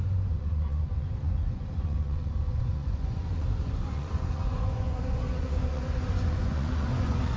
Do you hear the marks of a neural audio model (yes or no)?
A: yes